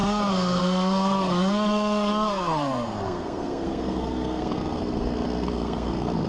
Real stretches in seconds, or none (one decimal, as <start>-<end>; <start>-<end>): none